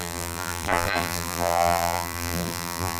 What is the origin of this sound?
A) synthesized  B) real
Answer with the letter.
A